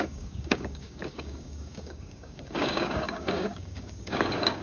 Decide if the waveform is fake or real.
fake